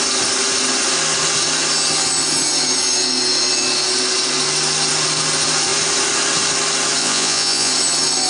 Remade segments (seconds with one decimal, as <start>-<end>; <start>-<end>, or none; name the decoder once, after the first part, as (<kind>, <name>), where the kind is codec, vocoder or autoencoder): 7.0-7.7 (vocoder, Vocos)